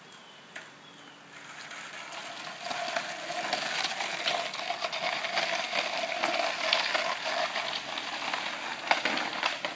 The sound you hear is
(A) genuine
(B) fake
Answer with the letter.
A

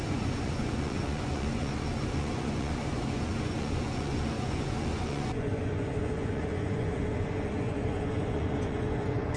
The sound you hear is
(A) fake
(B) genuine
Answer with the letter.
A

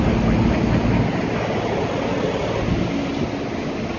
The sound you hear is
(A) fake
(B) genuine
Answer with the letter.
B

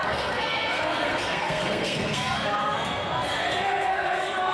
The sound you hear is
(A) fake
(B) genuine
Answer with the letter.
A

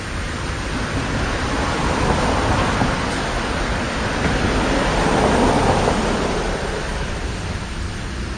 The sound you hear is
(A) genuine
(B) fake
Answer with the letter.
B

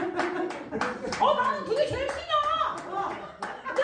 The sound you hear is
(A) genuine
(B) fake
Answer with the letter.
A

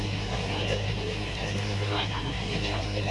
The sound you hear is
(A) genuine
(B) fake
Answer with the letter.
B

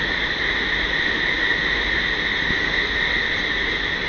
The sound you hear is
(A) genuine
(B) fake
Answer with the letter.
A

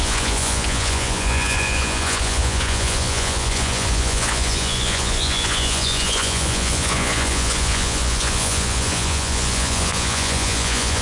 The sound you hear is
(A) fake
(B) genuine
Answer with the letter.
A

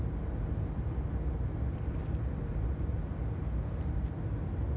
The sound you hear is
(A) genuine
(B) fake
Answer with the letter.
A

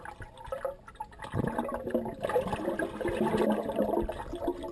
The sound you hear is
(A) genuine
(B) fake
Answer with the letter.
A